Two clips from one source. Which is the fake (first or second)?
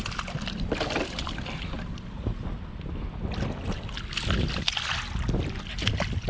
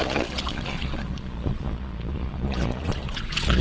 second